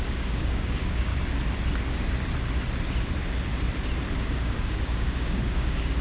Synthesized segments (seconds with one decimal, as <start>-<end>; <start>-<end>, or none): 0.0-1.1; 4.4-6.0